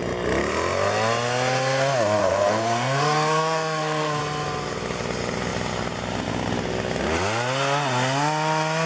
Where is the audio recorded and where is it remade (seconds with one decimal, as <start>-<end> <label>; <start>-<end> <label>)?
0.0-2.2 recorded; 2.2-4.2 remade; 4.2-8.9 recorded